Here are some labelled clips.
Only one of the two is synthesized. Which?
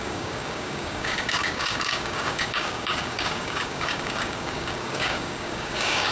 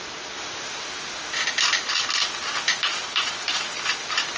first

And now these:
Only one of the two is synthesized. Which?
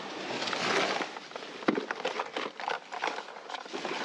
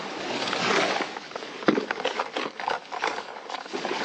second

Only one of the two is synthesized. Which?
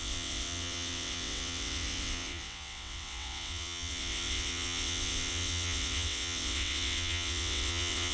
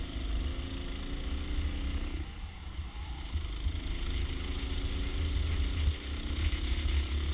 first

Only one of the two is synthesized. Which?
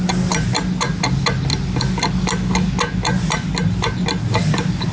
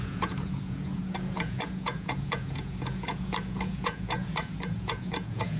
second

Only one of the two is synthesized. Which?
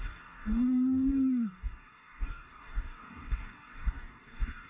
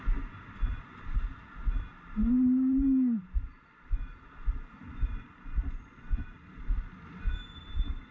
first